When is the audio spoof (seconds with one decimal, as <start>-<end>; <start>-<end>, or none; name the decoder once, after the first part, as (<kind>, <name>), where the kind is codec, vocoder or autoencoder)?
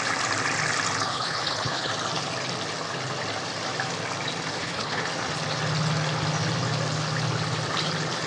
1.1-1.9 (codec, HILCodec); 4.6-5.1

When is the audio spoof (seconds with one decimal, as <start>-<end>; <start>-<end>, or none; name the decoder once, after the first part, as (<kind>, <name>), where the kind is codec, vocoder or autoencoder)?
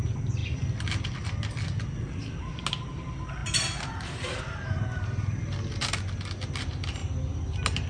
none